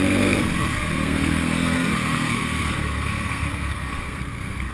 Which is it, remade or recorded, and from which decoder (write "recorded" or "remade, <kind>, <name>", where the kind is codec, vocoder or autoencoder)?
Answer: remade, codec, SNAC